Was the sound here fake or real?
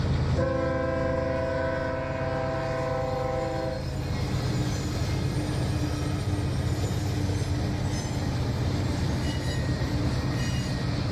real